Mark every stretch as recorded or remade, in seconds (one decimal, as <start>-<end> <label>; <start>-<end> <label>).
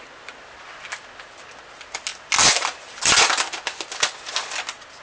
0.0-5.0 recorded